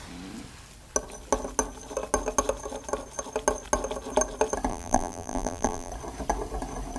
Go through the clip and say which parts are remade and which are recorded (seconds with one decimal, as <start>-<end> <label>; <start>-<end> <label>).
0.0-4.7 recorded; 4.7-5.9 remade; 5.9-7.0 recorded